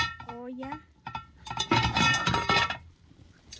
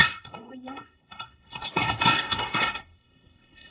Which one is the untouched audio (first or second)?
first